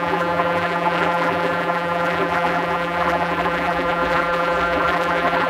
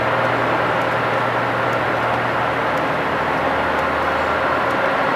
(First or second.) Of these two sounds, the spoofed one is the first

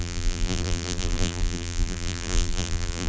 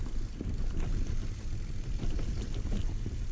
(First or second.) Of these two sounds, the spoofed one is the first